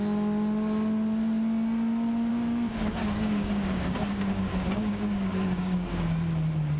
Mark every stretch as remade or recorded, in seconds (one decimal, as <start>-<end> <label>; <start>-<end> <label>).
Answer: 0.0-2.3 recorded; 2.3-6.1 remade; 6.1-6.8 recorded